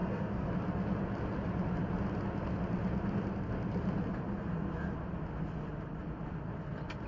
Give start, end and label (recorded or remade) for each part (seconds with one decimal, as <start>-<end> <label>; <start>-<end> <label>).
0.0-0.5 remade; 0.5-7.1 recorded